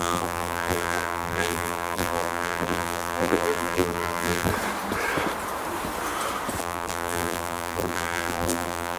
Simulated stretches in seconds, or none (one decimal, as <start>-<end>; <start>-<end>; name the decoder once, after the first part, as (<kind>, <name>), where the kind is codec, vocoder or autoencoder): 0.0-4.5 (vocoder, BigVGAN v2); 6.6-9.0